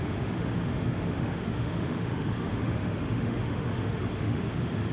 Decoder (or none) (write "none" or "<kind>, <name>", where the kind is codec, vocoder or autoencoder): autoencoder, DAC-VAE